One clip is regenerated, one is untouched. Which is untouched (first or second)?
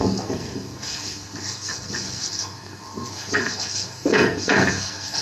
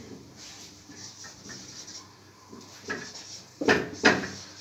second